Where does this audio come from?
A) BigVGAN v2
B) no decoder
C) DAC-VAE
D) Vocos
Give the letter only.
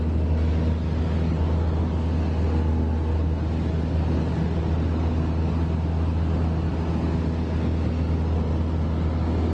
B